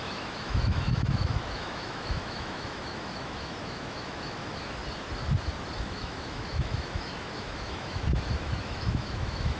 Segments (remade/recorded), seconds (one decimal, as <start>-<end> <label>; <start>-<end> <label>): 0.0-4.8 remade; 4.8-5.8 recorded; 5.8-9.6 remade